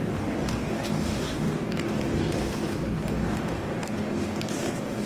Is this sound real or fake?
fake